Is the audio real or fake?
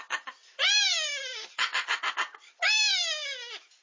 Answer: real